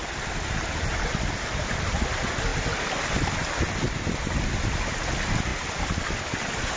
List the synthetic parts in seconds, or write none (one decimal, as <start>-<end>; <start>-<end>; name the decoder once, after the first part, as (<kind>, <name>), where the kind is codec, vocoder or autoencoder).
none